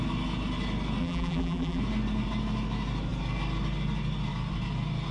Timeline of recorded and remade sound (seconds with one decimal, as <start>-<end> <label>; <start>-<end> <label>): 0.0-1.0 recorded; 1.0-1.8 remade; 1.8-5.1 recorded